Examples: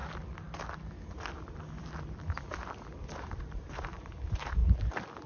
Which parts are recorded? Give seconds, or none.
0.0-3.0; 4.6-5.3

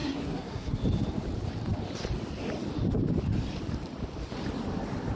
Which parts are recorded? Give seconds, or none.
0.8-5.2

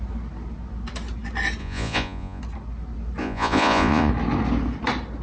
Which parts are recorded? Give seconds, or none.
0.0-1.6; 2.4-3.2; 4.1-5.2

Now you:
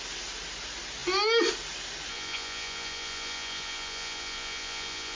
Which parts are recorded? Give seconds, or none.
0.0-2.1